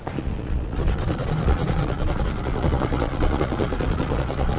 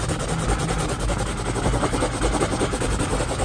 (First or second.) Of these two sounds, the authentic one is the second